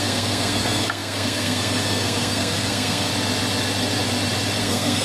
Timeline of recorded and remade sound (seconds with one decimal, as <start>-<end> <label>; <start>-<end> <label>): 0.0-3.1 remade; 3.1-4.6 recorded; 4.6-5.0 remade